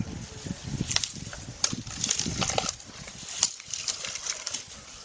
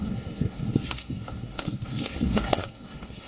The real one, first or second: first